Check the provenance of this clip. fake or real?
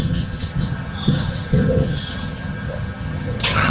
fake